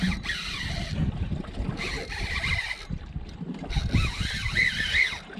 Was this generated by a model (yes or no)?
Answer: no